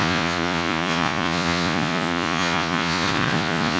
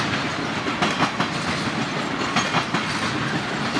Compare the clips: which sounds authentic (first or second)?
second